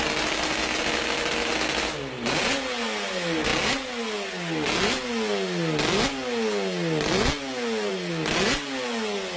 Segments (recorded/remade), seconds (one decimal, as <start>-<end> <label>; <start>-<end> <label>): 0.0-9.4 recorded